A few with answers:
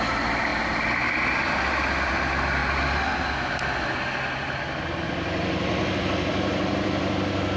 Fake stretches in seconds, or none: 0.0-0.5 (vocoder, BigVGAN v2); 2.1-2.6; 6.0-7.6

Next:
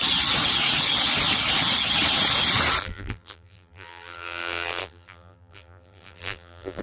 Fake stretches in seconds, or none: 2.8-6.8 (vocoder, BigVGAN v2)

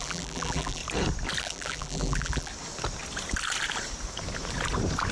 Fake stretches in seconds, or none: 0.0-0.8 (vocoder, BigVGAN v2); 1.4-2.5